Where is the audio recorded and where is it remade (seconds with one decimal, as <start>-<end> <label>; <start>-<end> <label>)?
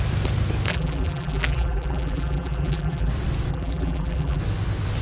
0.0-0.7 recorded; 0.7-3.1 remade; 3.1-3.5 recorded; 3.5-4.4 remade; 4.4-5.0 recorded